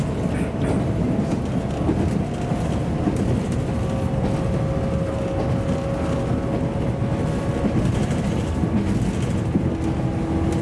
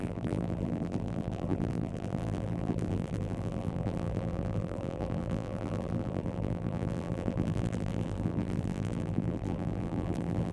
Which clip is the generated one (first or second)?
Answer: second